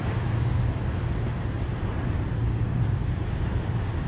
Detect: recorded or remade remade